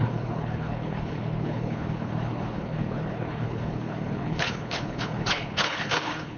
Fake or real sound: fake